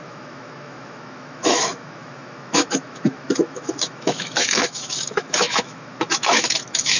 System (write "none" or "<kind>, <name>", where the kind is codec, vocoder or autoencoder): autoencoder, DAC-VAE